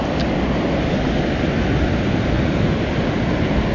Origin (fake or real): real